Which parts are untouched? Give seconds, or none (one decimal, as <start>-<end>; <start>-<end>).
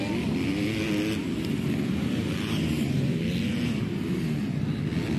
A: 0.0-1.2; 4.0-5.2